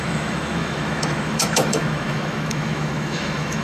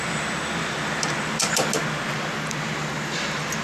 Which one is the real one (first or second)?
second